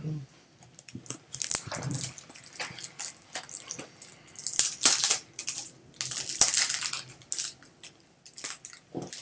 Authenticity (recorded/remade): recorded